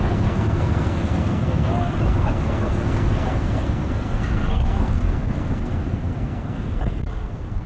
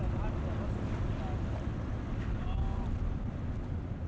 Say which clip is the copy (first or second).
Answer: first